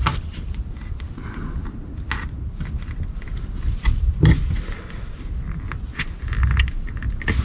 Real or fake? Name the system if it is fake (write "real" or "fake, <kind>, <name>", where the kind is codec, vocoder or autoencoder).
real